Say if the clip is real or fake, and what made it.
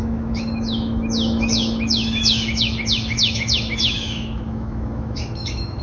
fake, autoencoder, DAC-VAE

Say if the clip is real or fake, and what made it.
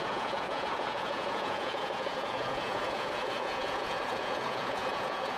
fake, vocoder, Vocos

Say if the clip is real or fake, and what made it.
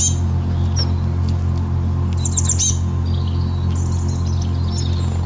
real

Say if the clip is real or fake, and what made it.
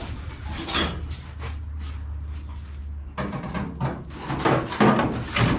real